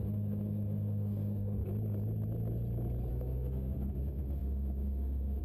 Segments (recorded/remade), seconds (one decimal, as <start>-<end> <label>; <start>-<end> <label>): 0.0-1.6 remade; 1.6-3.1 recorded; 3.1-5.4 remade